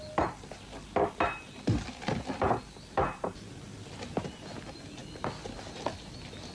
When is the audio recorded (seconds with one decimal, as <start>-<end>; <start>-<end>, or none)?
0.0-6.5